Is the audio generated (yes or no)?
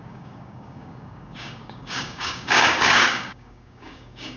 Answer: yes